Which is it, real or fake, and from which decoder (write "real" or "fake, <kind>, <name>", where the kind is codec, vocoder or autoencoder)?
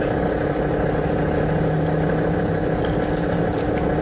real